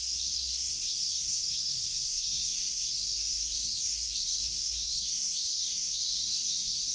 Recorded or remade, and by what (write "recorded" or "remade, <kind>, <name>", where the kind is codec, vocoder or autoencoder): remade, codec, SNAC